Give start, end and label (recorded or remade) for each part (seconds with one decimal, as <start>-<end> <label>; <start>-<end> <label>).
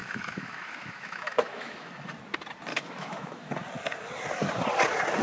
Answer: 0.0-1.9 remade; 1.9-2.7 recorded; 2.7-3.5 remade; 3.5-5.2 recorded